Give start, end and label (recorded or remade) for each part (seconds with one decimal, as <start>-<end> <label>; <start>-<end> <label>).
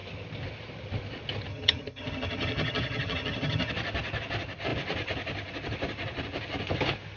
0.0-1.5 recorded; 1.5-3.7 remade; 3.7-7.2 recorded